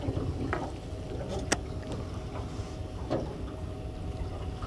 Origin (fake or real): real